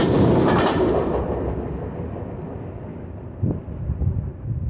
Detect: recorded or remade recorded